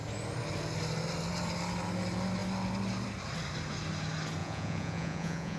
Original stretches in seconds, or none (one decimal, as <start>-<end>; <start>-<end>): 0.0-4.4